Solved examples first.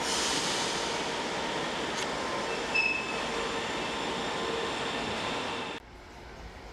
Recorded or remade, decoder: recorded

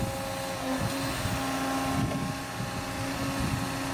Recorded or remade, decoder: recorded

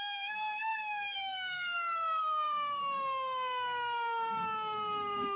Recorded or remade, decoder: remade, codec, SNAC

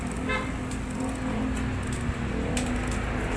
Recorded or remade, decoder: recorded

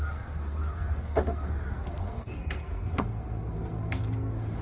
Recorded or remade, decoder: remade, codec, SNAC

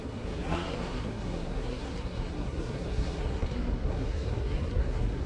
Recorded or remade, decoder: remade, codec, SNAC